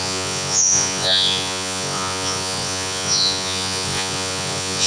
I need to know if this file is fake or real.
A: fake